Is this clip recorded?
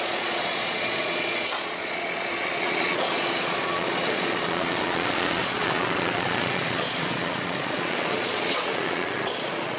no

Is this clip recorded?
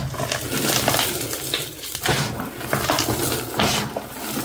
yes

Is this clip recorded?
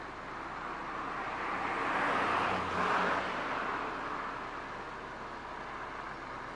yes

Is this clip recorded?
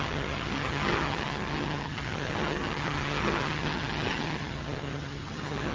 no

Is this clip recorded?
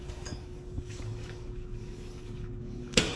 no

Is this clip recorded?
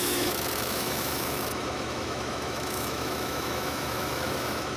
no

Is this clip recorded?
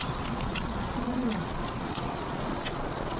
no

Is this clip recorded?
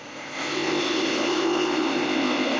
no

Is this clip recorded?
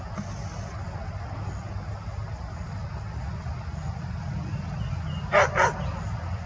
yes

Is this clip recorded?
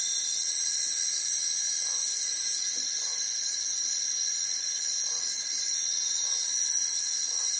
yes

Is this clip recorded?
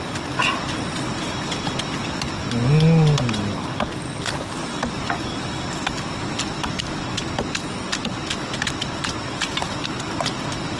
yes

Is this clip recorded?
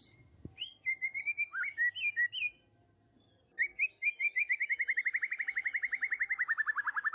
yes